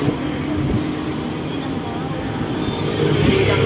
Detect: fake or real real